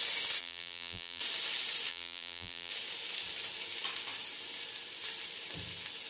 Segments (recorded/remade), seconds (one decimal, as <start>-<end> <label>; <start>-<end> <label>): 0.0-0.4 recorded; 0.4-1.2 remade; 1.2-1.9 recorded; 1.9-2.7 remade; 2.7-6.1 recorded